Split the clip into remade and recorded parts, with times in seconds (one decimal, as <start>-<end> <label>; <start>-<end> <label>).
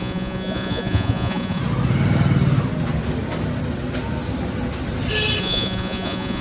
0.0-1.6 remade; 1.6-5.4 recorded; 5.4-6.4 remade